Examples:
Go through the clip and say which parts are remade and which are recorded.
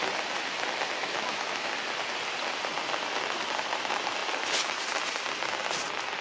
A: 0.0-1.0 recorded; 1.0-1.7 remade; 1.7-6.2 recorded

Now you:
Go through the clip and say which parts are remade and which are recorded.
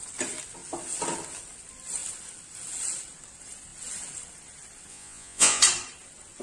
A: 0.0-4.9 recorded; 4.9-5.6 remade; 5.6-6.4 recorded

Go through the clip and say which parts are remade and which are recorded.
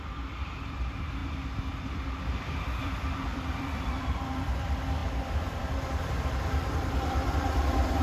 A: 0.0-1.2 remade; 1.2-2.8 recorded; 2.8-5.0 remade; 5.0-5.6 recorded; 5.6-8.0 remade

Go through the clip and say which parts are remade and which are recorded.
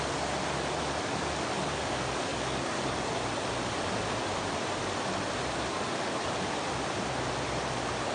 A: 0.0-2.3 recorded; 2.3-3.1 remade; 3.1-8.1 recorded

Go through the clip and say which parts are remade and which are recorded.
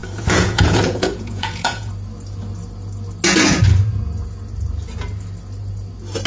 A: 0.0-1.9 remade; 1.9-6.3 recorded